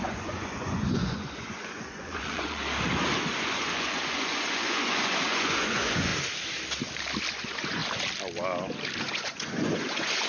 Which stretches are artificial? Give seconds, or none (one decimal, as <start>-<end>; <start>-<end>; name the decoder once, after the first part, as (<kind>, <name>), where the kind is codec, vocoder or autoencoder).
0.0-2.6 (vocoder, Vocos); 3.4-6.1; 7.3-7.8; 9.0-10.3